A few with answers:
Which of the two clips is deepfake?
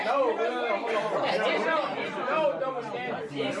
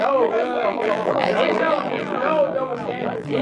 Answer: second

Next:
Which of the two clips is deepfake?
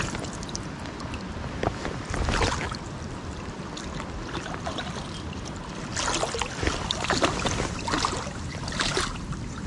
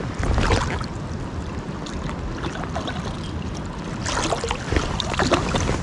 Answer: first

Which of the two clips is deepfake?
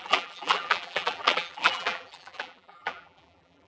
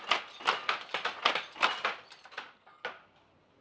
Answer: first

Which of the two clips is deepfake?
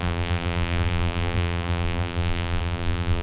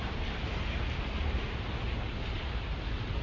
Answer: first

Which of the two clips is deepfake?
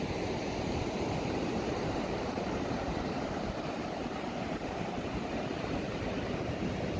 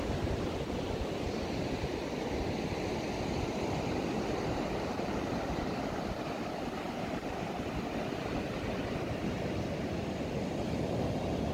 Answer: first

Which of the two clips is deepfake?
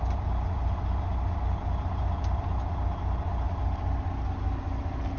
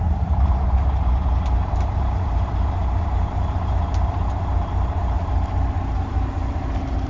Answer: second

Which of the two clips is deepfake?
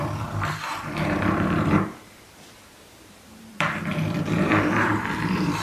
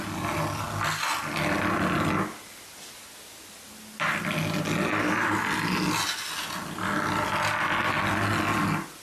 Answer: first